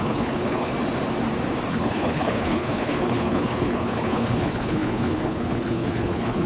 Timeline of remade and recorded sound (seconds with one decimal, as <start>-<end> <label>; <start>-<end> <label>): 0.0-0.7 remade; 0.7-1.7 recorded; 1.7-6.5 remade